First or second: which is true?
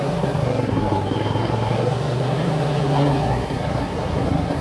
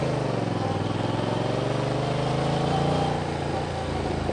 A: second